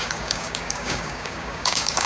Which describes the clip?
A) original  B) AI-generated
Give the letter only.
B